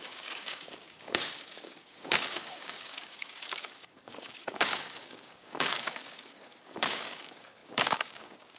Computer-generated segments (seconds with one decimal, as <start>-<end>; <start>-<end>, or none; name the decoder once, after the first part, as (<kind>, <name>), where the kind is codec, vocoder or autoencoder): 0.0-8.6 (codec, DAC)